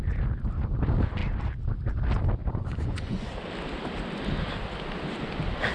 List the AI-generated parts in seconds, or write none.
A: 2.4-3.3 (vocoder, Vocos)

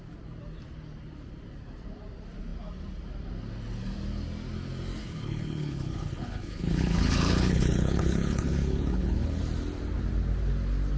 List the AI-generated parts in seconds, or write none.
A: 5.0-9.4 (codec, HILCodec)

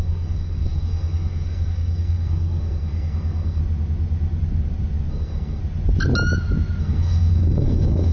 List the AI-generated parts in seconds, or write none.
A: 0.0-3.6 (codec, SNAC); 5.1-5.6; 6.8-8.1